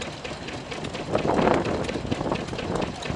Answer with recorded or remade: recorded